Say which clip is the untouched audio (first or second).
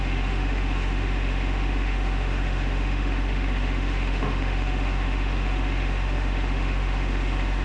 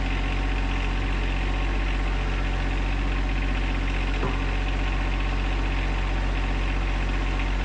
second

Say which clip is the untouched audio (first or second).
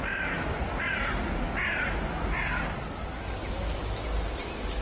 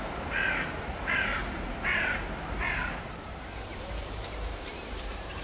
first